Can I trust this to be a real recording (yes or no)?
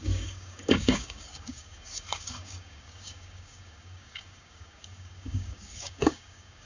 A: no